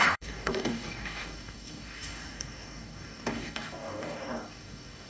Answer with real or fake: fake